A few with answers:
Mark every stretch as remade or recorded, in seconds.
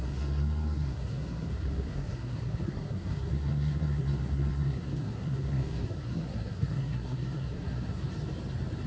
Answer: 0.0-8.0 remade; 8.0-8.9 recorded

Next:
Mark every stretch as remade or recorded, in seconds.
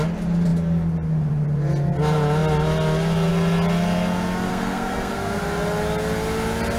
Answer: 0.0-4.5 recorded; 4.5-5.4 remade; 5.4-6.8 recorded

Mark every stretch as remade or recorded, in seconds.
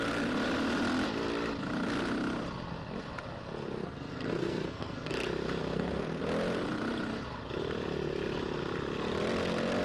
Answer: 0.0-3.8 recorded; 3.8-5.1 remade; 5.1-5.6 recorded; 5.6-6.2 remade; 6.2-9.8 recorded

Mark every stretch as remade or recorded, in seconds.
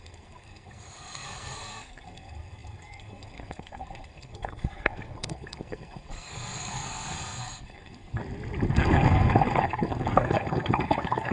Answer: 0.0-8.2 remade; 8.2-8.7 recorded; 8.7-11.3 remade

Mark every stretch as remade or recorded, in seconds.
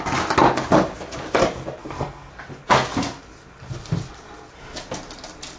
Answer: 0.0-1.8 recorded; 1.8-2.3 remade; 2.3-5.6 recorded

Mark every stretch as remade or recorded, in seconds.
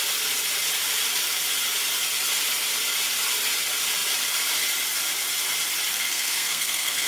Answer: 0.0-5.9 recorded; 5.9-7.1 remade